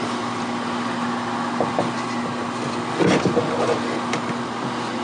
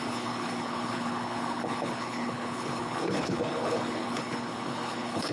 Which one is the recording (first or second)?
first